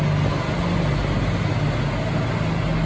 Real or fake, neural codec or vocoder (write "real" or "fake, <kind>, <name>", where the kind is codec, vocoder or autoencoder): real